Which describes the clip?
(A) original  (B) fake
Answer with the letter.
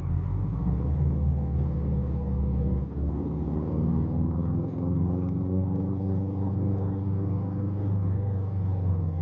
B